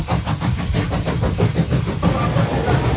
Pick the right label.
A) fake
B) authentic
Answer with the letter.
B